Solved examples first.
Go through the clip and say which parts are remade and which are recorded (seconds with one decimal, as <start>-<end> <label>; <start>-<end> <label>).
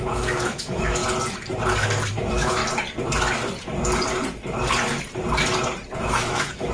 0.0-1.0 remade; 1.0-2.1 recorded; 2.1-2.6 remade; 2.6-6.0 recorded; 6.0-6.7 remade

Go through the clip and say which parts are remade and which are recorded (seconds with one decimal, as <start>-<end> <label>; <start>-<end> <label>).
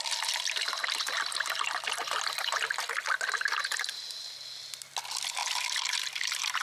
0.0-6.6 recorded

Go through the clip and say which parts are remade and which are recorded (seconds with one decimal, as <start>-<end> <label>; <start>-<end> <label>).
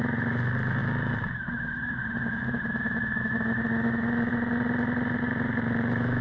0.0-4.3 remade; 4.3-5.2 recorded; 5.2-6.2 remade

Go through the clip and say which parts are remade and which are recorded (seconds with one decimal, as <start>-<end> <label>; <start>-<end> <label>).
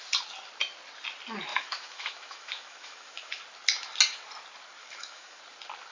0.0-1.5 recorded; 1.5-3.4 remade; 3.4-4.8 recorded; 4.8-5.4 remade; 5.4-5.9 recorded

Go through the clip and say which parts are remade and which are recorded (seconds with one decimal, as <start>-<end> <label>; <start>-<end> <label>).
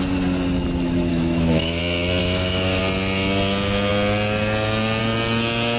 0.0-1.1 recorded; 1.1-1.8 remade; 1.8-2.2 recorded; 2.2-2.8 remade; 2.8-5.8 recorded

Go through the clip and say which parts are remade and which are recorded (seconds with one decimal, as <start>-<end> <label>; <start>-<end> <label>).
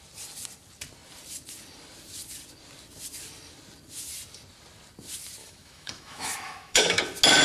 0.0-5.4 recorded; 5.4-7.0 remade; 7.0-7.4 recorded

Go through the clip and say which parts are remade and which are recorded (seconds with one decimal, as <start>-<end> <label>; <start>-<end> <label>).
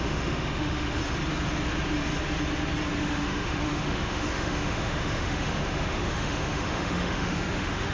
0.0-1.0 remade; 1.0-3.0 recorded; 3.0-7.9 remade